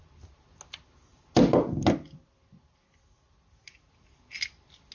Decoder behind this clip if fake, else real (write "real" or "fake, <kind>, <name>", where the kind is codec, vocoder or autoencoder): real